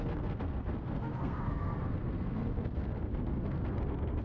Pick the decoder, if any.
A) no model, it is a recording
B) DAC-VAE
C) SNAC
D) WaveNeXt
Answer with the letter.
C